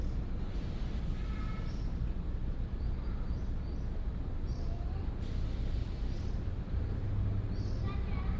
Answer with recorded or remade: recorded